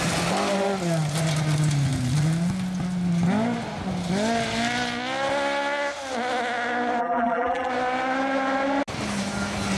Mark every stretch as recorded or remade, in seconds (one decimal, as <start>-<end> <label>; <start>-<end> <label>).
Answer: 0.0-7.0 recorded; 7.0-7.7 remade; 7.7-9.8 recorded